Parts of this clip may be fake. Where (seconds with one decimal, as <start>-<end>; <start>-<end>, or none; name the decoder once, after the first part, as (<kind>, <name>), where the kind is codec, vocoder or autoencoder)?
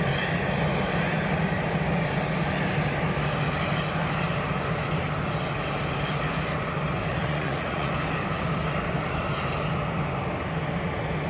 7.1-7.9 (vocoder, Vocos)